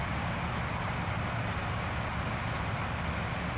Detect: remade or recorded recorded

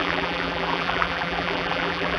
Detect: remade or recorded remade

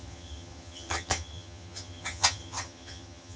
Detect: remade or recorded remade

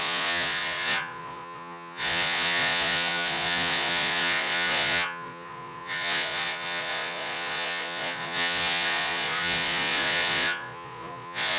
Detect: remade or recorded remade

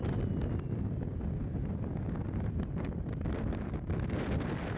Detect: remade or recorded recorded